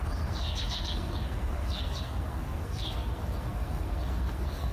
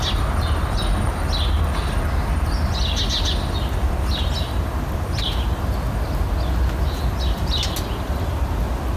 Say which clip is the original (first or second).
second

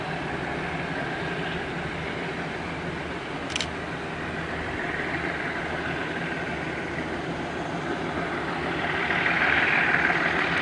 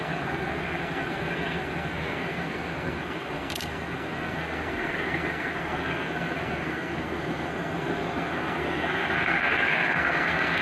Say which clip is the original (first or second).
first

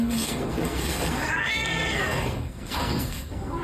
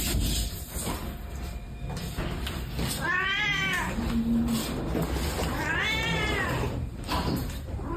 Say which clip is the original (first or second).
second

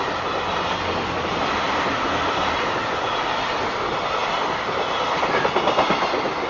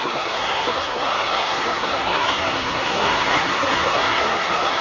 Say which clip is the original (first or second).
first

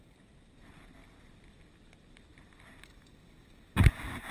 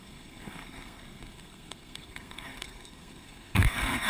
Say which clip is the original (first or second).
first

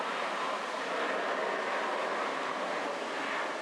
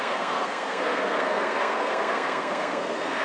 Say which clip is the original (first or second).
first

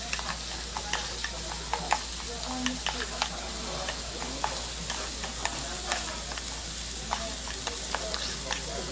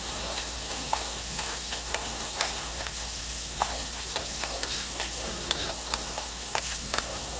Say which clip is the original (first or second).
first